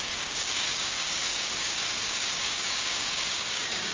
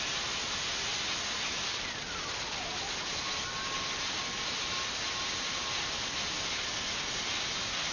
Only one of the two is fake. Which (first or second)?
first